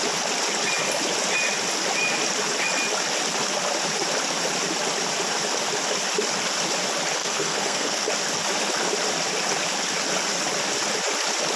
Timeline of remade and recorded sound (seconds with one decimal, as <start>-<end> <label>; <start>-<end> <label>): 0.0-7.2 recorded; 7.2-8.1 remade; 8.1-11.6 recorded